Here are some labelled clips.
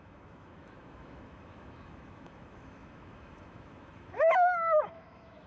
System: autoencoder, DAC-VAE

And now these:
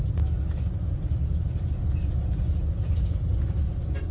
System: none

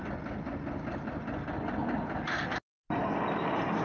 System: none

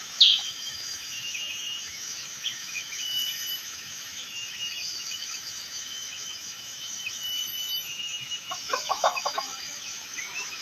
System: autoencoder, DAC-VAE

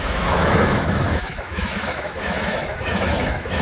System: autoencoder, DAC-VAE